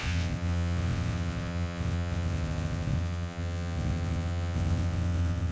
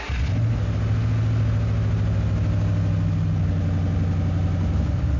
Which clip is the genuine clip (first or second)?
second